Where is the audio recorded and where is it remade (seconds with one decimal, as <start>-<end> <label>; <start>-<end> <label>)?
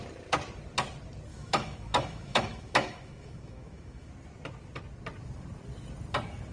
0.0-1.3 recorded; 1.3-4.1 remade; 4.1-6.5 recorded